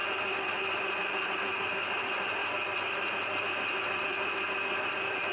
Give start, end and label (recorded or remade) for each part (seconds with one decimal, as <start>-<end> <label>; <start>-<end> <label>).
0.0-5.3 recorded